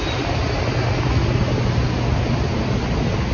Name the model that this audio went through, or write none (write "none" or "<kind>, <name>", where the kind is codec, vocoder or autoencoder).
none